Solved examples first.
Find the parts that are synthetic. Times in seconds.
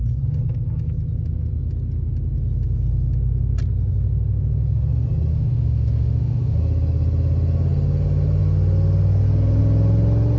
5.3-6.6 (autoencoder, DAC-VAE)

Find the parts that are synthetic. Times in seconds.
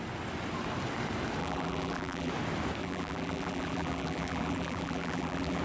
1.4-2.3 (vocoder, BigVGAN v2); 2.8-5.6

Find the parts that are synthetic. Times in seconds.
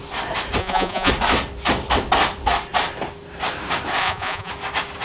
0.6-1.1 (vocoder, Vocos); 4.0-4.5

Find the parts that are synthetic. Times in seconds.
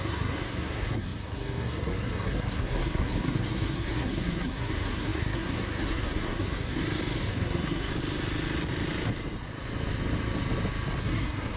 0.0-6.8 (codec, SNAC); 7.3-7.9; 11.0-11.6